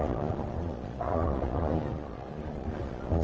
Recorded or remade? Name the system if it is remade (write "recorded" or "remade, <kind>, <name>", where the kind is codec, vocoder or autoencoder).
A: remade, vocoder, Vocos